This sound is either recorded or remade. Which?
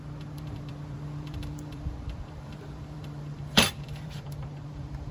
remade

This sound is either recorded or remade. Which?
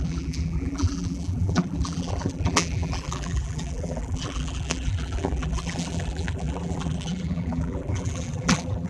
remade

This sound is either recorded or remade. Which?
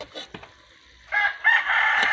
recorded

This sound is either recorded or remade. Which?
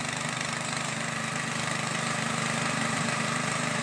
remade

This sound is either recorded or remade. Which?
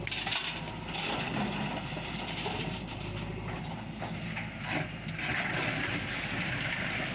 recorded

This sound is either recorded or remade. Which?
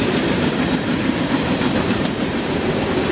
remade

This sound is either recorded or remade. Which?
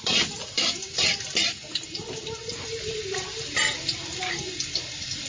remade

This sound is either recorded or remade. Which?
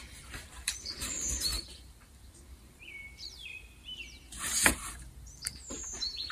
remade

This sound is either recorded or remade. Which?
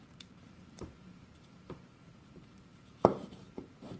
remade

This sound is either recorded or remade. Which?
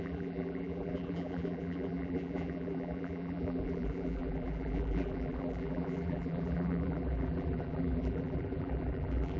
remade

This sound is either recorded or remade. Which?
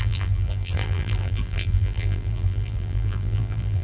remade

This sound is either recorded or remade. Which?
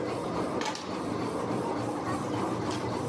recorded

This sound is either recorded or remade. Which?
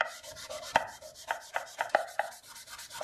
remade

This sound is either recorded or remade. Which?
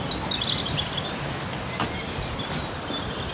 recorded